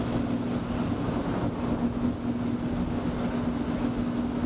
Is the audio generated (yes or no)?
no